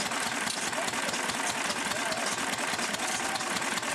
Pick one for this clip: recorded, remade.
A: recorded